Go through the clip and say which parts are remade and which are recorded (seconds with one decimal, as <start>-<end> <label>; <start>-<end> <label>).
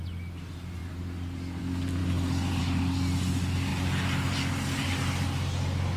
0.0-6.0 recorded